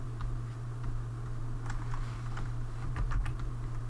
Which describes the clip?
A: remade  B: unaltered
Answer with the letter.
B